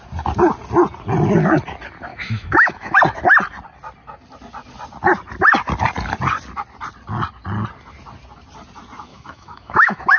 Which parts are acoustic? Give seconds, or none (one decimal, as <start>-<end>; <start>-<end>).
0.0-2.1; 3.0-9.1